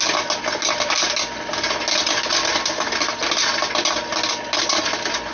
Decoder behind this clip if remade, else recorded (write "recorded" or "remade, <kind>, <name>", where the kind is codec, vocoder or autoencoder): recorded